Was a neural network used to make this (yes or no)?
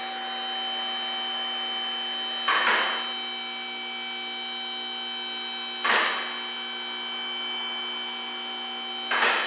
no